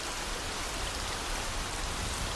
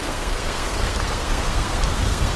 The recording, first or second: first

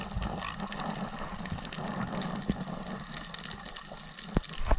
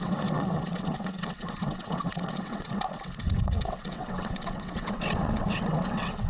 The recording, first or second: first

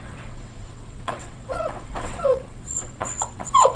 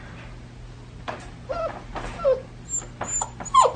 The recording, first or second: second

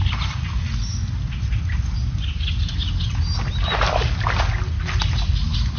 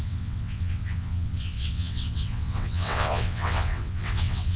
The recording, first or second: first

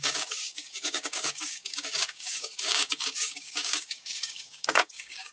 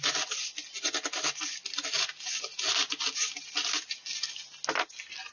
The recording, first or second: second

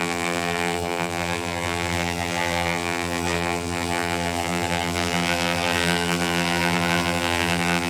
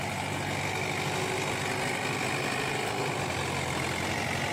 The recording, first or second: second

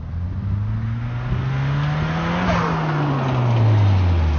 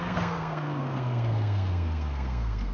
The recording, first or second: first